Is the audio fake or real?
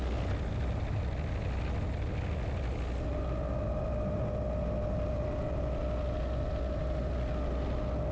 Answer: real